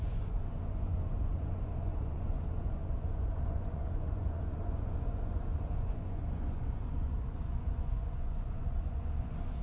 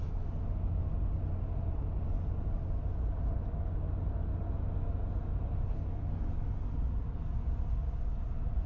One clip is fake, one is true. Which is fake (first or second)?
first